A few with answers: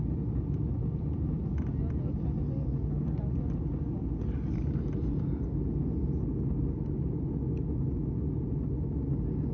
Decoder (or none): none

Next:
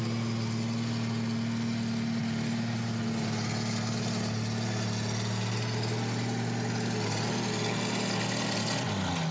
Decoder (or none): none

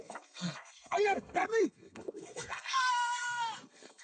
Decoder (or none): codec, SNAC